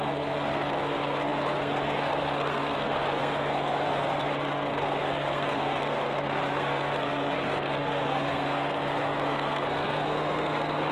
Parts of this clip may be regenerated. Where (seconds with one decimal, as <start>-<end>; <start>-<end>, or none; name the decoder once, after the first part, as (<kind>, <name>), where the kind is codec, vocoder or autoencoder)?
0.0-10.9 (codec, SNAC)